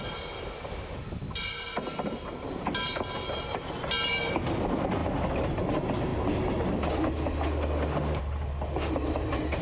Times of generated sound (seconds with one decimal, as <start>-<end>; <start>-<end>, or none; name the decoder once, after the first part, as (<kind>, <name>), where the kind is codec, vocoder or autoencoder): none